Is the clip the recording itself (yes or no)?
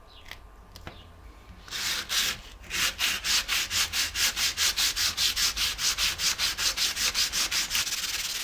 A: yes